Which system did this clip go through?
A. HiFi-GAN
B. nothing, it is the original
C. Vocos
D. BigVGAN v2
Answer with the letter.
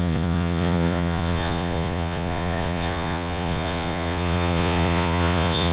C